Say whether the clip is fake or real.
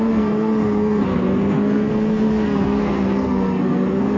fake